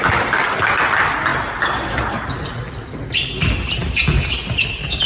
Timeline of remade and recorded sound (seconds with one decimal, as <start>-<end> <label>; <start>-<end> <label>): 0.0-5.1 recorded